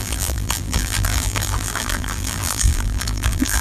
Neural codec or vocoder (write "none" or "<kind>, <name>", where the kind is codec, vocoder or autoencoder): vocoder, BigVGAN v2